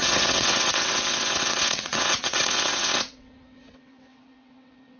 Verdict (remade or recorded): remade